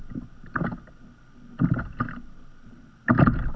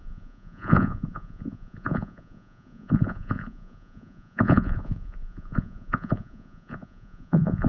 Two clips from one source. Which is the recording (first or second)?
first